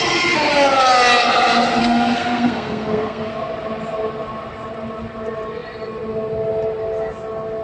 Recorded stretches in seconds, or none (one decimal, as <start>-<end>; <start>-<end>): 0.0-1.8; 3.3-7.6